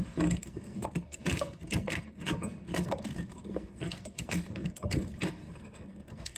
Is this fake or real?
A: fake